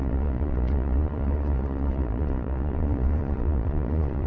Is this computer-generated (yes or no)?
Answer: yes